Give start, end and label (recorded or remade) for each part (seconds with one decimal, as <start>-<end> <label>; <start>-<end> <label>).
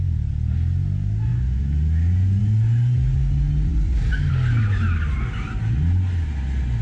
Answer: 0.0-6.8 recorded